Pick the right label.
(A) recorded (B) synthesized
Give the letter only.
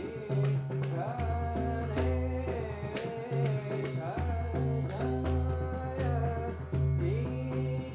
A